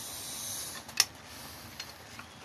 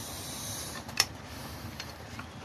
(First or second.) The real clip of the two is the first